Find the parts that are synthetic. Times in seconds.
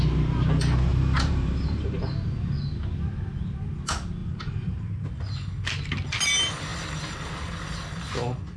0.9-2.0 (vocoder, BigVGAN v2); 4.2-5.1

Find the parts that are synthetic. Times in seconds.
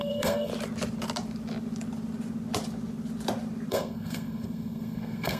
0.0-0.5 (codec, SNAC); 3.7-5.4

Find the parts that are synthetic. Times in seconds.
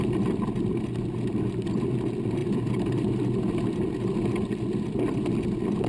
2.4-3.5 (vocoder, BigVGAN v2)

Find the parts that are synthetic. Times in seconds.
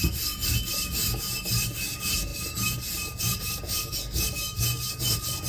0.0-5.5 (codec, DAC)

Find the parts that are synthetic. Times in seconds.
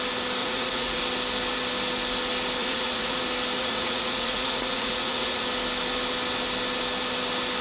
0.4-1.0 (vocoder, Vocos); 2.6-3.2; 3.6-5.4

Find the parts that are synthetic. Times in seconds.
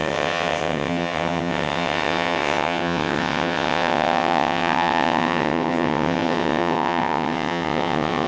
0.0-8.3 (vocoder, WaveNeXt)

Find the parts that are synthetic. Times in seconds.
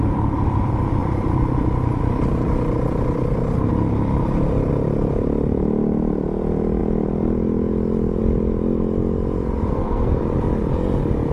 9.7-10.2 (codec, SNAC)